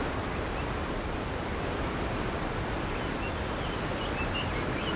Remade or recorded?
recorded